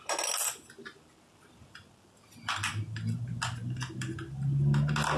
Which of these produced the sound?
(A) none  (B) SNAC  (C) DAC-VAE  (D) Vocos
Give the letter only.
A